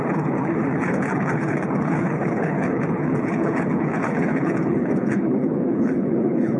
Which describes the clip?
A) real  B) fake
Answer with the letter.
B